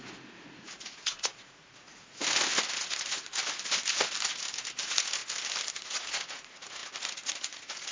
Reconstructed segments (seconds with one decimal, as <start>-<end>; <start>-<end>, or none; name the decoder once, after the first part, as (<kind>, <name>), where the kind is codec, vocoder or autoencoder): 0.0-2.2 (vocoder, Vocos); 2.8-3.4; 4.8-5.2; 5.8-7.9